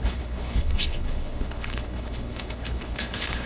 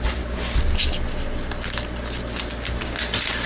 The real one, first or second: second